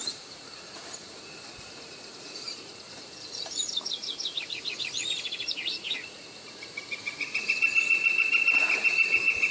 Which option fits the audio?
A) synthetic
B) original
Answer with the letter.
A